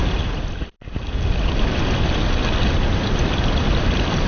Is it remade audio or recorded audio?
recorded